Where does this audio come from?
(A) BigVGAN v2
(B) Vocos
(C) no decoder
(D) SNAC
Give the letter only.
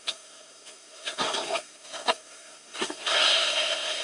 D